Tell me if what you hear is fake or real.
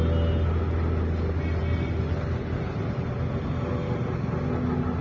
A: real